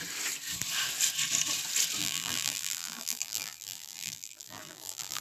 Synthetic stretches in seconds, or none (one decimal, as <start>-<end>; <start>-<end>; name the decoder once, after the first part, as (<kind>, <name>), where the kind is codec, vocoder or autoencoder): 2.0-5.2 (vocoder, BigVGAN v2)

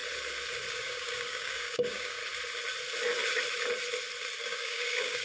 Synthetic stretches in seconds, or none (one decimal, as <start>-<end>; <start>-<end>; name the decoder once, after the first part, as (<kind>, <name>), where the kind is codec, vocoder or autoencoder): 0.7-2.2 (codec, DAC); 4.4-5.2

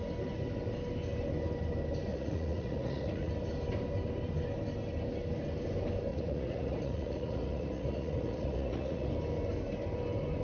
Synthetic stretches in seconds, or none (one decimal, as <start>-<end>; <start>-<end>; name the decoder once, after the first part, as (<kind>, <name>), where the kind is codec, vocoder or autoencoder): 2.1-3.3 (vocoder, Vocos); 6.1-9.1

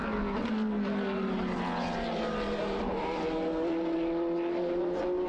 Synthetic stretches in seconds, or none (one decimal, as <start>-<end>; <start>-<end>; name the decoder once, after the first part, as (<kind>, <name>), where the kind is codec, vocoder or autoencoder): none